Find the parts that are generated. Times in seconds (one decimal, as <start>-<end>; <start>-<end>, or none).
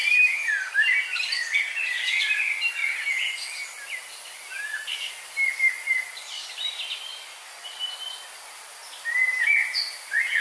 none